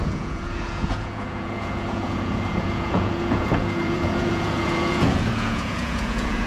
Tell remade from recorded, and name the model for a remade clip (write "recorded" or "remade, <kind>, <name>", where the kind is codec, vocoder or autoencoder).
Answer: remade, vocoder, Vocos